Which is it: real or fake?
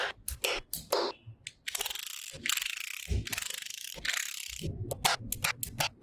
real